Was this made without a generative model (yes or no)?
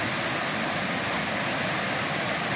yes